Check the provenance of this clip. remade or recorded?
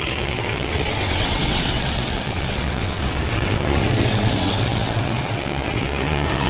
remade